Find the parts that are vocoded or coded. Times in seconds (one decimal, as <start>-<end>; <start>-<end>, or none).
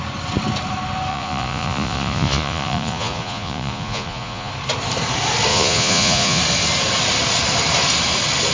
1.1-4.5; 5.5-6.4